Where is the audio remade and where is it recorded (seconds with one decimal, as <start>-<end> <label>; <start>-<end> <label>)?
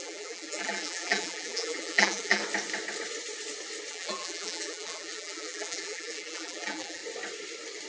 0.0-2.4 remade; 2.4-3.9 recorded; 3.9-7.0 remade; 7.0-7.9 recorded